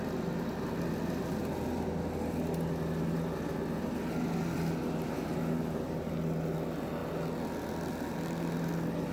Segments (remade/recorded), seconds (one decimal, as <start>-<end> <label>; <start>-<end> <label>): 0.0-9.1 recorded

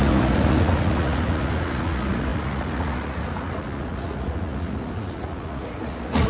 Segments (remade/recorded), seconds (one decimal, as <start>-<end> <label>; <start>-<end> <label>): 0.0-6.3 remade

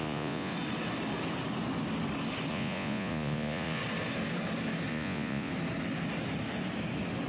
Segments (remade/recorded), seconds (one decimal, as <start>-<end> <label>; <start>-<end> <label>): 0.0-0.5 remade; 0.5-2.5 recorded; 2.5-3.8 remade; 3.8-4.9 recorded; 4.9-5.5 remade; 5.5-7.3 recorded

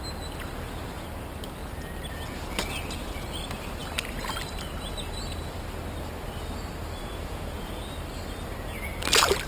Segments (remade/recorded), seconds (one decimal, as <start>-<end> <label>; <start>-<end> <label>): 0.0-7.0 recorded; 7.0-7.8 remade; 7.8-9.5 recorded

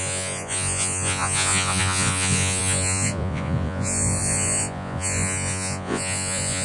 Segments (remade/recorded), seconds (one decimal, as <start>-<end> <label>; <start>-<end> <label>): 0.0-6.6 remade

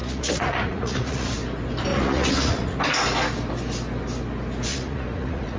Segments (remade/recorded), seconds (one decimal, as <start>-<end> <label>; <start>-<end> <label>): 0.0-1.3 remade; 1.3-1.9 recorded; 1.9-2.8 remade; 2.8-4.7 recorded; 4.7-5.6 remade

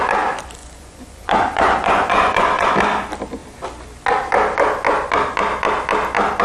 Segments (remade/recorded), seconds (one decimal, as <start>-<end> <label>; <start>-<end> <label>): 0.0-0.6 recorded; 0.6-2.7 remade; 2.7-6.4 recorded